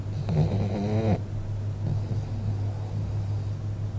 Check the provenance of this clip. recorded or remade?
recorded